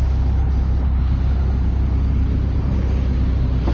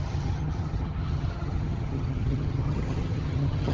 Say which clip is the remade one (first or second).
second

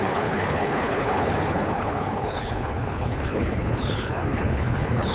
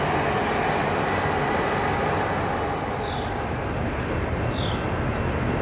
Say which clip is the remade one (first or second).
first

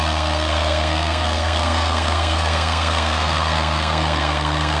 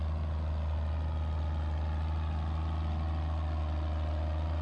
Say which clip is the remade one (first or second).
first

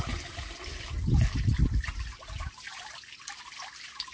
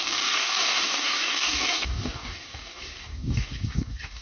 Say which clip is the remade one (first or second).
second